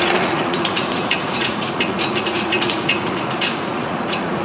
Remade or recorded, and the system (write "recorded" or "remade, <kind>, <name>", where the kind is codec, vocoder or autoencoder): remade, vocoder, Vocos